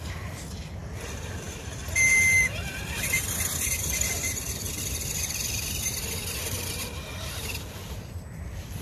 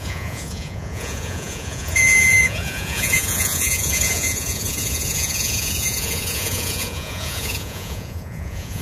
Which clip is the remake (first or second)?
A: second